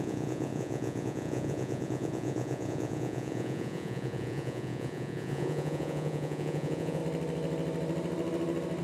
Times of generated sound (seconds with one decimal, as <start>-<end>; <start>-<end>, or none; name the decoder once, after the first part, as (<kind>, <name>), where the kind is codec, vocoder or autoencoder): 0.0-7.0 (vocoder, Vocos)